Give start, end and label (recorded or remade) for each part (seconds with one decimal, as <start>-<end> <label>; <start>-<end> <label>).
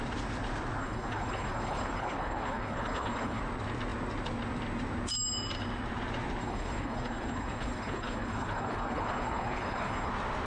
0.0-0.8 recorded; 0.8-3.4 remade; 3.4-6.4 recorded; 6.4-10.1 remade; 10.1-10.5 recorded